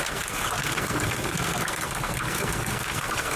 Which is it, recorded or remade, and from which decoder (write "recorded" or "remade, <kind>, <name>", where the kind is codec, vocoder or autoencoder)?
remade, codec, SNAC